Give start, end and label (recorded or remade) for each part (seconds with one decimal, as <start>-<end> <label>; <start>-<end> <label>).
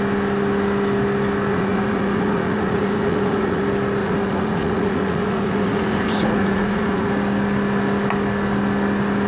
0.0-1.5 recorded; 1.5-3.6 remade; 3.6-4.0 recorded; 4.0-7.1 remade; 7.1-9.3 recorded